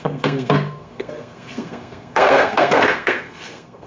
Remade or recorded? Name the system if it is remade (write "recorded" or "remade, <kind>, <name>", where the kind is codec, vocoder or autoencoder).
remade, codec, SNAC